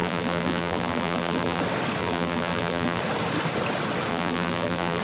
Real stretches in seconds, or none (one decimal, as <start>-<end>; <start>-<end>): 1.6-2.0; 3.0-4.1